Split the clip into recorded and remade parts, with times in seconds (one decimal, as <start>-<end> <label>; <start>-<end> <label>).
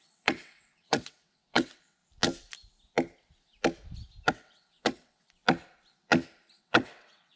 0.0-2.0 remade; 2.0-4.3 recorded; 4.3-5.4 remade; 5.4-6.6 recorded; 6.6-7.4 remade